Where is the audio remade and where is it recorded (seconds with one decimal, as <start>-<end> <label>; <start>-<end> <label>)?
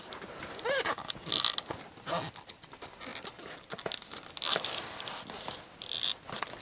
0.0-6.6 recorded